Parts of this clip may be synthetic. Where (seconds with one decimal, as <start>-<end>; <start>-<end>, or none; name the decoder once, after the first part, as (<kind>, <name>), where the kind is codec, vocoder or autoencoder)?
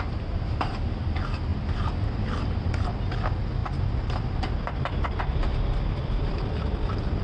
1.5-3.0 (vocoder, BigVGAN v2); 3.6-6.4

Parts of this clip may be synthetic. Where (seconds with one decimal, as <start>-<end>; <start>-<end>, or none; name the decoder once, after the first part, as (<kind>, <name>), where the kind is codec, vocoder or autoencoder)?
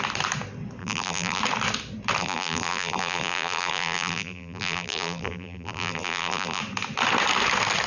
0.8-1.4 (vocoder, BigVGAN v2); 2.2-6.6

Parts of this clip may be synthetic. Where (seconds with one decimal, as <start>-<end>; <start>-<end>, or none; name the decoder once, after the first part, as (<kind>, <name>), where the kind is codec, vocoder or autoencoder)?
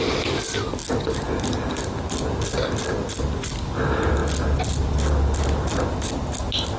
none